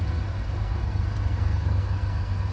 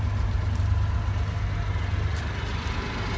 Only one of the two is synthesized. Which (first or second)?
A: first